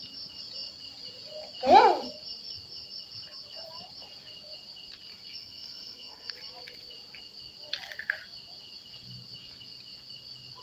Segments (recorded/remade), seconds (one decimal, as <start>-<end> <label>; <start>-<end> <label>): 0.0-5.4 recorded; 5.4-6.3 remade; 6.3-10.6 recorded